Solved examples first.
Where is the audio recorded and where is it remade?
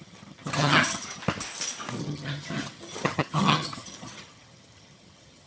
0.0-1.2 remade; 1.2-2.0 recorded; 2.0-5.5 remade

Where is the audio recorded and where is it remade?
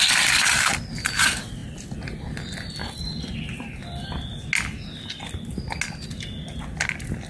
0.0-7.3 recorded